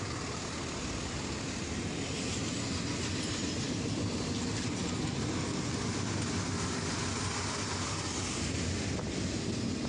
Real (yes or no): yes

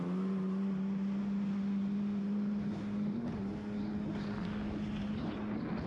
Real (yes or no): yes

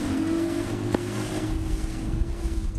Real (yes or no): no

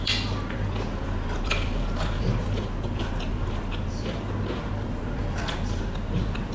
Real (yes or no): yes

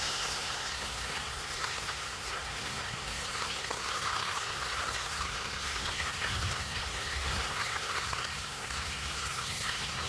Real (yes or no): no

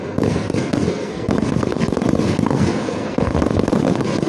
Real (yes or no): no